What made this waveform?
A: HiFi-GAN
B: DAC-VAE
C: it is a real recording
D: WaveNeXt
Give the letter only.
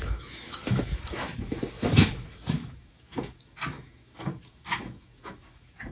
B